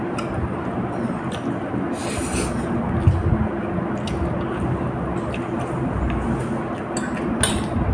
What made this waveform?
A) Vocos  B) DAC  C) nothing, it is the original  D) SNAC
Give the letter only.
C